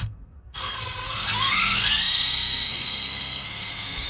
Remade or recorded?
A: remade